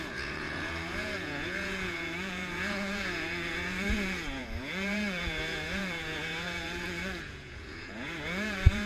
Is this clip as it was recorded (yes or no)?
no